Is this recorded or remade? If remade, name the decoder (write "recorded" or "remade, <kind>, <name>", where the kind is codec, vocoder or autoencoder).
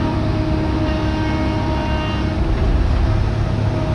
recorded